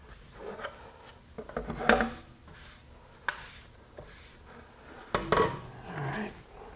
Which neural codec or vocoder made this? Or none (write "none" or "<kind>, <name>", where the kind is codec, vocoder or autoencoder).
none